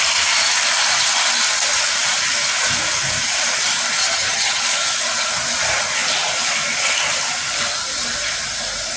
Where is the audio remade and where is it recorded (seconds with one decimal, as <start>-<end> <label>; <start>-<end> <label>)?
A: 0.0-4.0 recorded; 4.0-4.6 remade; 4.6-9.0 recorded

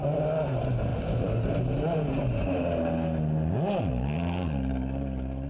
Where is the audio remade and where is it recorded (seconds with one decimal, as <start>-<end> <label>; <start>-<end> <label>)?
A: 0.0-5.5 recorded